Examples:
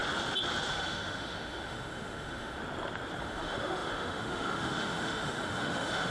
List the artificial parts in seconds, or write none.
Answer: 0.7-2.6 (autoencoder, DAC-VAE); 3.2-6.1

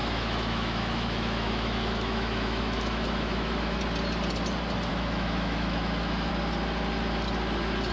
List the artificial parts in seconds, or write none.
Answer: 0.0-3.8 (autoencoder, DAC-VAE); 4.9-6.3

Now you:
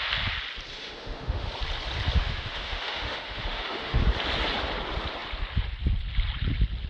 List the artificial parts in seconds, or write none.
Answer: 0.7-1.5 (autoencoder, DAC-VAE); 2.2-4.0